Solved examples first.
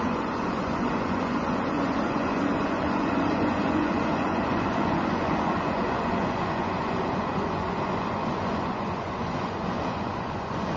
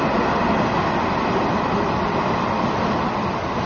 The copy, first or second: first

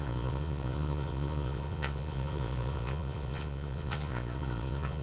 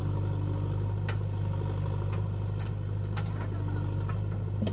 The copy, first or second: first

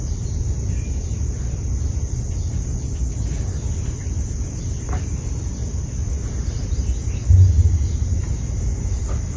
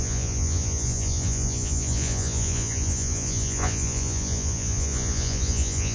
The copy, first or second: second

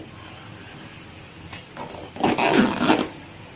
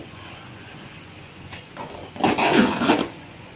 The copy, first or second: second